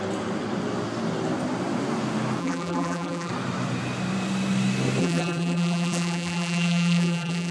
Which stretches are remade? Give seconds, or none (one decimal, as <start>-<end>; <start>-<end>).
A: 2.4-3.3; 5.0-7.5